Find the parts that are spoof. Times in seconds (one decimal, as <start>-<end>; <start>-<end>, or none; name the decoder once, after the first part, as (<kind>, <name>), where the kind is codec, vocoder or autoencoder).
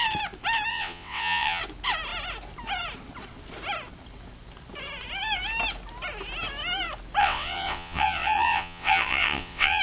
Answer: 0.7-1.6 (vocoder, WaveNeXt); 7.2-9.8